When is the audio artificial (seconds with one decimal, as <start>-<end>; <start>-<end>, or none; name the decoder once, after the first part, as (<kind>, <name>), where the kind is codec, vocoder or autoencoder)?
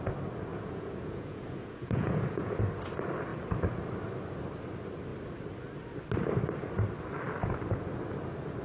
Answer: 0.5-2.6 (vocoder, Vocos)